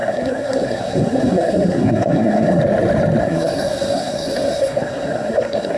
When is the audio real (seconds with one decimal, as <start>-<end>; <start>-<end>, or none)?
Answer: 2.6-3.2